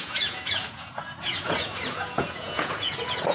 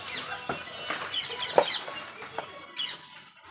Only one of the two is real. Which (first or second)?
second